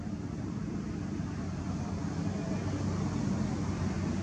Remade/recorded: recorded